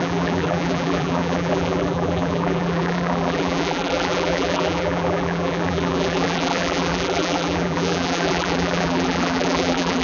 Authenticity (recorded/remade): remade